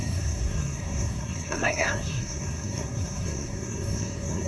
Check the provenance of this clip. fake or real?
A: fake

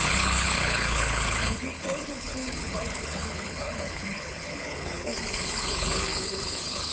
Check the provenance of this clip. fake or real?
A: fake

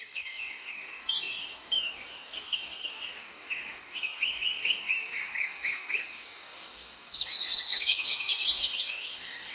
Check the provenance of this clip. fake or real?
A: fake